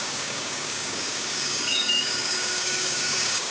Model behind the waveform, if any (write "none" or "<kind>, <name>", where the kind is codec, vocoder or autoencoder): codec, DAC